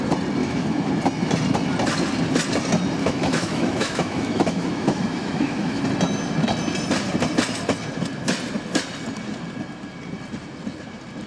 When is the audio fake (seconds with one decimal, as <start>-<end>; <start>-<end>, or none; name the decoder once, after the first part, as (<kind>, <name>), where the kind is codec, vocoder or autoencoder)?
0.4-0.9 (autoencoder, DAC-VAE); 3.0-5.8